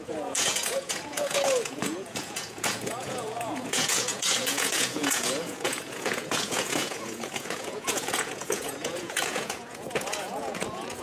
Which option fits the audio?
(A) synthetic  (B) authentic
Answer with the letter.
A